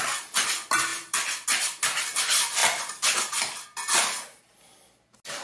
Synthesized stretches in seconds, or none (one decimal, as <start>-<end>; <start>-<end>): none